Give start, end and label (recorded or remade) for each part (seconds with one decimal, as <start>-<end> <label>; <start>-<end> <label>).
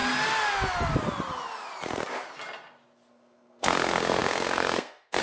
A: 0.0-3.1 recorded; 3.1-5.2 remade